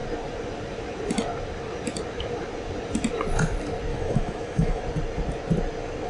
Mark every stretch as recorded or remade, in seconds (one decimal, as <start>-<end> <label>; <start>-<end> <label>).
0.0-3.9 recorded; 3.9-4.8 remade; 4.8-6.1 recorded